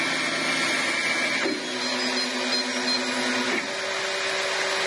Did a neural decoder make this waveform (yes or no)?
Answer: no